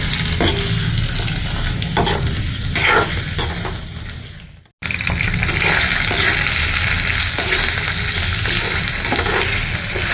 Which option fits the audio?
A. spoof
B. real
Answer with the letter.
B